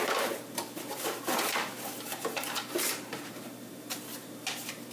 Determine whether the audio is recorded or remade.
remade